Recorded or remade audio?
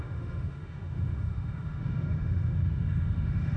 remade